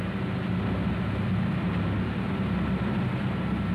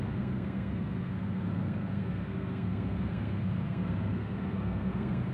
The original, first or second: first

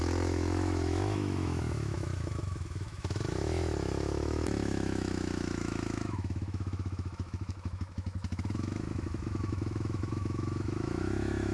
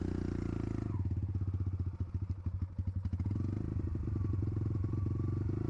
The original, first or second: second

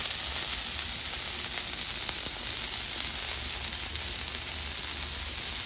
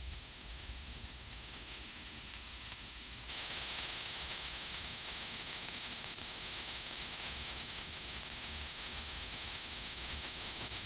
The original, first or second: first